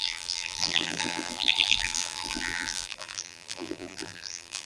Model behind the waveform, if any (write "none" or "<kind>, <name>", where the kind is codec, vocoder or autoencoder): vocoder, BigVGAN v2